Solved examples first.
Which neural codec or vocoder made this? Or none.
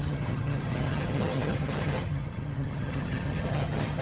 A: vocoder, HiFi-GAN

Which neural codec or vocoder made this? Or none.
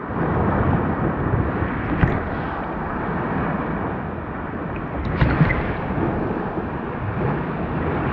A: none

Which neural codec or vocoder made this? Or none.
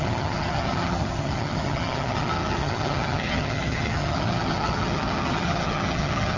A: vocoder, HiFi-GAN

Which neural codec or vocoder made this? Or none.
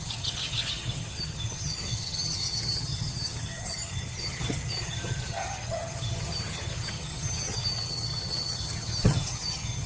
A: vocoder, HiFi-GAN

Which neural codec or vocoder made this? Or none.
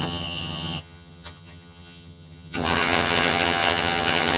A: vocoder, HiFi-GAN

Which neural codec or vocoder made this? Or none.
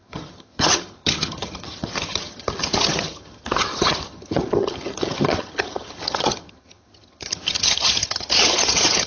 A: vocoder, HiFi-GAN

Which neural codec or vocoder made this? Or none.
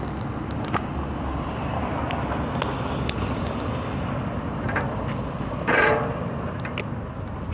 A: none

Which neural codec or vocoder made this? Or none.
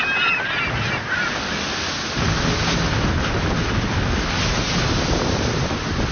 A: none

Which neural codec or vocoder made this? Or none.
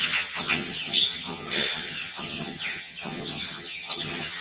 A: vocoder, HiFi-GAN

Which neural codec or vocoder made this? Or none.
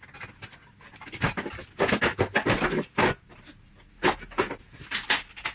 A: none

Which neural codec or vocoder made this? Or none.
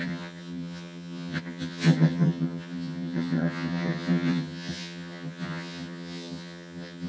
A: vocoder, HiFi-GAN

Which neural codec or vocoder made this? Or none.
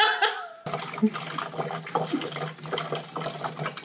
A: none